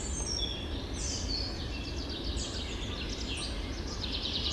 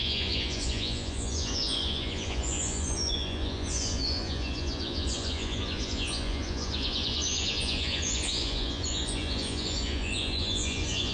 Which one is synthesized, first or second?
second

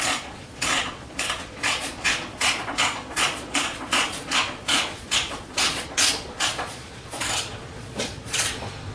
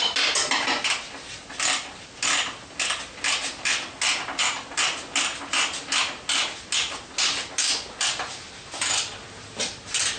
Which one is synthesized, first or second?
first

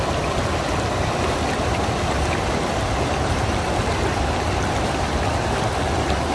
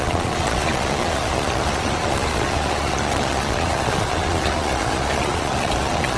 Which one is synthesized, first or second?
second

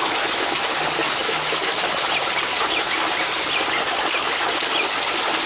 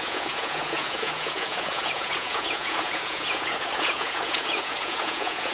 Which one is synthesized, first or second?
second